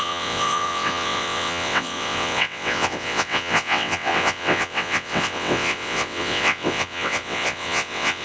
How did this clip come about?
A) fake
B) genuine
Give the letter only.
A